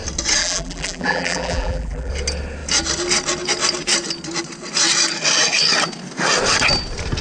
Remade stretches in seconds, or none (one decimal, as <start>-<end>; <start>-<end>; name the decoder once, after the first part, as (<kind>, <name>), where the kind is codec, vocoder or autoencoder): 0.4-2.1 (vocoder, BigVGAN v2)